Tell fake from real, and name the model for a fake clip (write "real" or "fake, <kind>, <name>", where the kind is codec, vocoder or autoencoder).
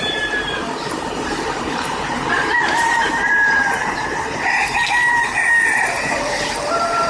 fake, vocoder, BigVGAN v2